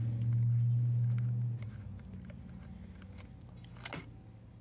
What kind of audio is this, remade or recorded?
recorded